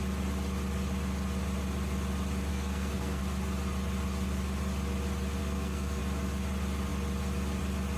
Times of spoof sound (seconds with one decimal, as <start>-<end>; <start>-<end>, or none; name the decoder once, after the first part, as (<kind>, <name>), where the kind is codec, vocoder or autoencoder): 2.5-3.2 (codec, SNAC); 5.4-6.0

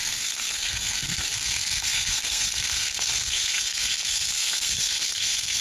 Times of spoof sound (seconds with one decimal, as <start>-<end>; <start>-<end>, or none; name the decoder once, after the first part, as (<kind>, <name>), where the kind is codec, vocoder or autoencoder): 0.0-5.6 (codec, SNAC)

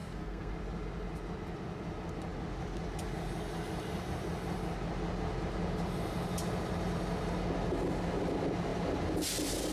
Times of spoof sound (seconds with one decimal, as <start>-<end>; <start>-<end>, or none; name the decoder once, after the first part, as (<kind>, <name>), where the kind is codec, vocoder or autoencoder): 0.0-0.5 (codec, SNAC)